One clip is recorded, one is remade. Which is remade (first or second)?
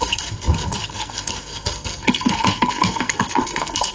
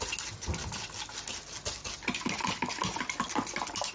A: first